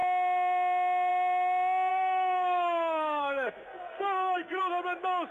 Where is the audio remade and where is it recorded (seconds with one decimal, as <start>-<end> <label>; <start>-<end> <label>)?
0.0-1.9 recorded; 1.9-4.6 remade; 4.6-5.3 recorded